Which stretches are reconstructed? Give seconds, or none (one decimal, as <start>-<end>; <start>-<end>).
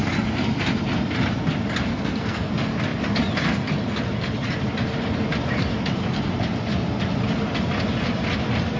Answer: 1.9-2.5